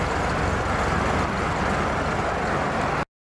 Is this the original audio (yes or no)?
yes